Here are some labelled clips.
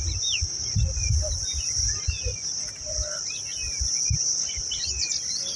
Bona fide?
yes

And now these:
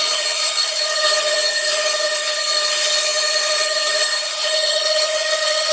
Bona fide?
no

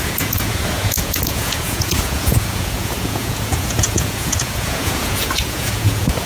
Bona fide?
no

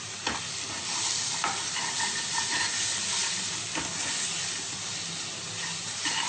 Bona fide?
yes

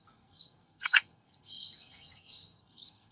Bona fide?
no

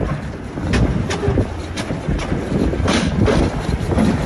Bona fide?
yes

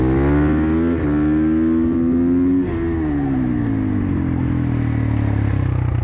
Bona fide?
yes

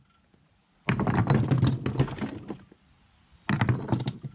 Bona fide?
yes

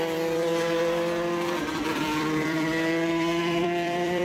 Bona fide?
no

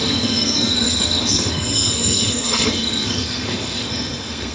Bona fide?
no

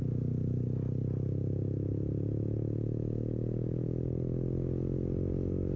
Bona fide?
yes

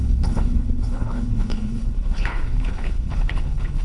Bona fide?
no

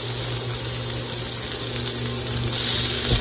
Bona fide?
yes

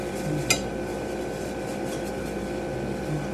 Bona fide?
yes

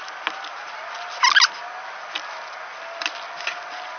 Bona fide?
yes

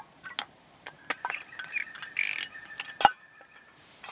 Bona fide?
yes